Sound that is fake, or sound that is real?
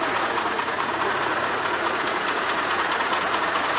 fake